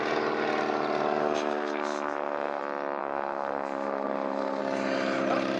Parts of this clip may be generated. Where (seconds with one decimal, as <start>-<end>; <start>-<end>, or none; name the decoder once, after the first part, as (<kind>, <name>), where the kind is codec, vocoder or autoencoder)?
1.2-2.6 (codec, SNAC); 3.0-4.6